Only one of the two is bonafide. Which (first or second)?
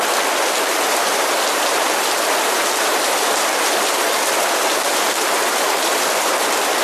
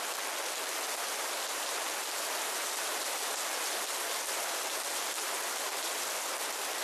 second